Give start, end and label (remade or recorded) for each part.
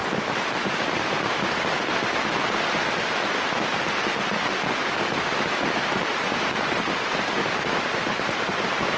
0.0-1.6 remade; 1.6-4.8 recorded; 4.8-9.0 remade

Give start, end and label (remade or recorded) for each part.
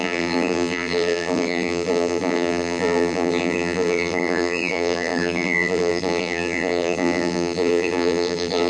0.0-8.7 remade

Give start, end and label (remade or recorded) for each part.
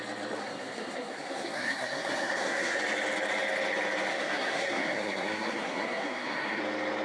0.0-0.4 recorded; 0.4-2.8 remade; 2.8-4.1 recorded; 4.1-6.6 remade; 6.6-7.0 recorded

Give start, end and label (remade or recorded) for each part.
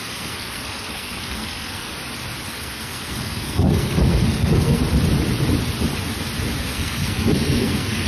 0.0-1.9 remade; 1.9-2.5 recorded; 2.5-4.8 remade; 4.8-6.6 recorded; 6.6-8.1 remade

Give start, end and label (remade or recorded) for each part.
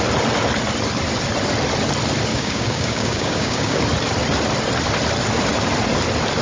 0.0-2.3 recorded; 2.3-3.8 remade; 3.8-6.4 recorded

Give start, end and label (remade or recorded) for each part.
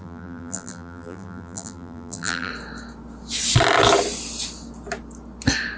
0.0-2.5 remade; 2.5-5.8 recorded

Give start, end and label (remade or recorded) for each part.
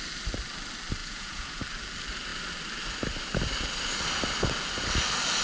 0.0-1.0 recorded; 1.0-1.6 remade; 1.6-5.4 recorded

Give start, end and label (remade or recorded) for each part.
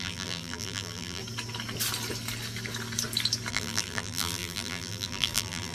0.0-1.2 remade; 1.2-3.5 recorded; 3.5-5.7 remade